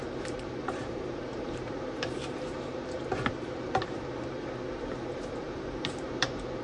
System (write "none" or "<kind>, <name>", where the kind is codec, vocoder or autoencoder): vocoder, BigVGAN v2